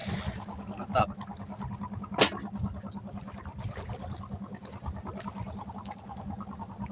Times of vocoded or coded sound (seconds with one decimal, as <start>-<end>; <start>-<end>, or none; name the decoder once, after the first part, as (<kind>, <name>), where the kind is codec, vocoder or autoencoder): none